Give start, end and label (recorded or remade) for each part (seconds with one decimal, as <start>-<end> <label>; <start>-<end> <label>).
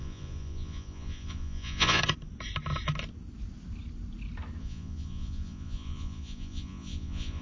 0.0-2.0 remade; 2.0-4.6 recorded; 4.6-7.4 remade